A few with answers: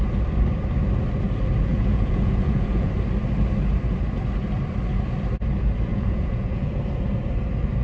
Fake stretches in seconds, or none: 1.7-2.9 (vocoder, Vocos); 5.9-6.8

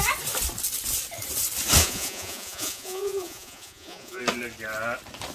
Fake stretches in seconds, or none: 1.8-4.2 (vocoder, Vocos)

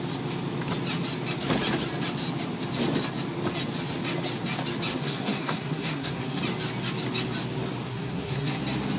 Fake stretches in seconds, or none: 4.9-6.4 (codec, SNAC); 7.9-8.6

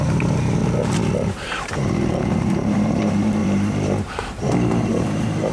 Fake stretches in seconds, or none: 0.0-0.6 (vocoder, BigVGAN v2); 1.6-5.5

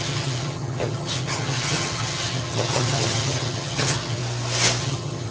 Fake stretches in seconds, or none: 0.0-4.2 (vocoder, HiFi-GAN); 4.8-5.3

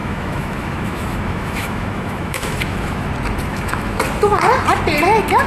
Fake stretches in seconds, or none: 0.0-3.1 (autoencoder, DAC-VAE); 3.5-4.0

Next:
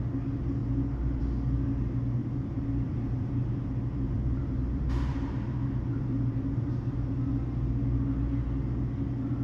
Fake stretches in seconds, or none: 2.2-7.3 (vocoder, BigVGAN v2)

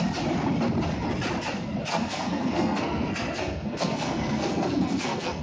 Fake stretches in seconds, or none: 1.9-5.4 (codec, SNAC)